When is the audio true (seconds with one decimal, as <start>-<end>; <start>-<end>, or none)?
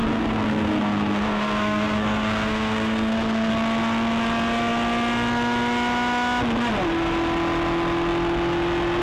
3.5-9.0